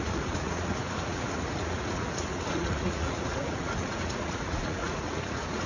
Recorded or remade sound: remade